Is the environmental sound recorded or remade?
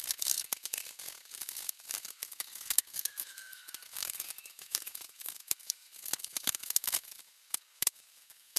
remade